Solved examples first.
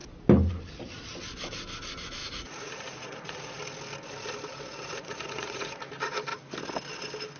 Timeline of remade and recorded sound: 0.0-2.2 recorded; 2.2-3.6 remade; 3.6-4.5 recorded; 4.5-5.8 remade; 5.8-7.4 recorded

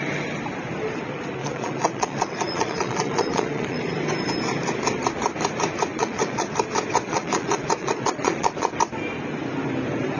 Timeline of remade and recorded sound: 0.0-1.4 recorded; 1.4-3.8 remade; 3.8-5.9 recorded; 5.9-6.5 remade; 6.5-7.1 recorded; 7.1-8.7 remade; 8.7-10.2 recorded

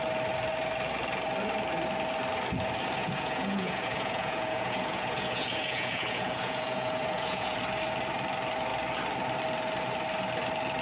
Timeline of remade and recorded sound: 0.0-3.0 recorded; 3.0-7.6 remade; 7.6-10.8 recorded

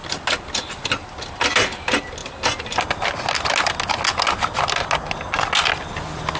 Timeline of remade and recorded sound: 0.0-6.4 recorded

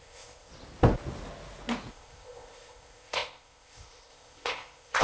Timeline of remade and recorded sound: 0.0-0.5 remade; 0.5-1.9 recorded; 1.9-5.0 remade

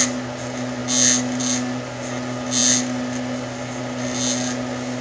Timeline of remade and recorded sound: 0.0-5.0 recorded